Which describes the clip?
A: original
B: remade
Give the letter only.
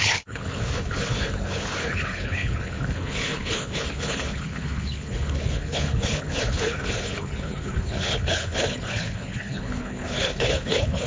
B